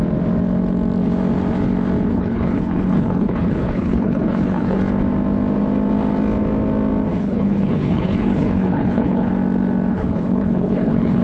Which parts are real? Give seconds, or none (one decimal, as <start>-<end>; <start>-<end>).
0.0-2.1; 4.8-7.1; 9.3-9.9